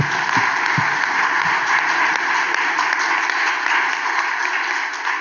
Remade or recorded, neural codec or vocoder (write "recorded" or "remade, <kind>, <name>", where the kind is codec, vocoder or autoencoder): recorded